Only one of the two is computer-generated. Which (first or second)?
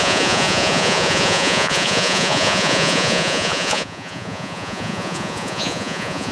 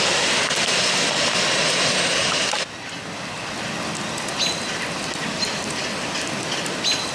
first